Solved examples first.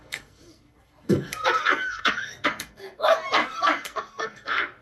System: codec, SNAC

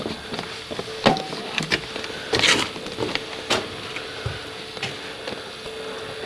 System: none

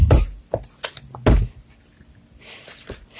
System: none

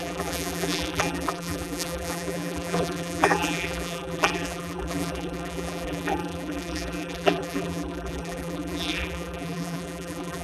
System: vocoder, BigVGAN v2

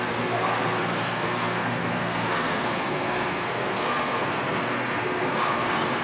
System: codec, SNAC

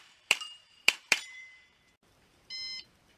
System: vocoder, BigVGAN v2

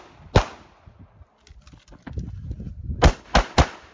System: none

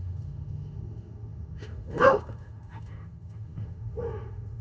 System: autoencoder, DAC-VAE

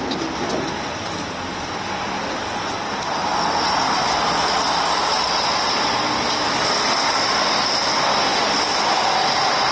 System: none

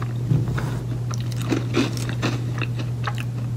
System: none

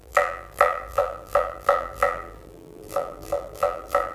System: vocoder, BigVGAN v2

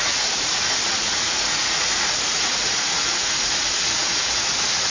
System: vocoder, Vocos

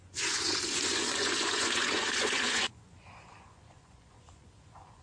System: vocoder, Vocos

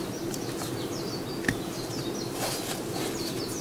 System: none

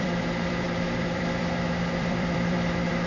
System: vocoder, BigVGAN v2